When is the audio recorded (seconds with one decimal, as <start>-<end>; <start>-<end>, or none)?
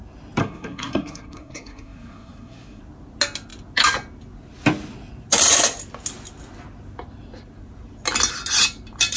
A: 0.0-0.4; 2.8-9.2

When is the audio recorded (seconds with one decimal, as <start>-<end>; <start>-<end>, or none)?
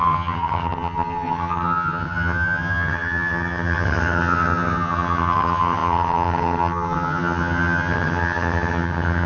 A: none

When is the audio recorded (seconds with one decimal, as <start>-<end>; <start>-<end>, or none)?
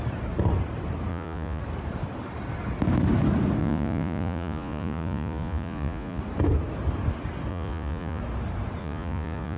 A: 0.0-1.1; 1.6-3.6; 6.2-7.5; 8.2-8.8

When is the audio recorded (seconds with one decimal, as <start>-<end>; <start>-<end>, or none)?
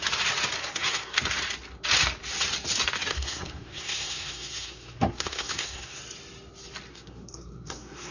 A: 0.0-0.6; 1.2-3.1; 6.0-6.9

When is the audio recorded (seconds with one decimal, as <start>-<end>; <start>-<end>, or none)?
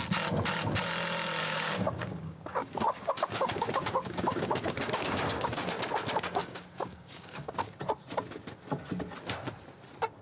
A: 0.0-1.4; 5.7-6.4; 7.5-10.2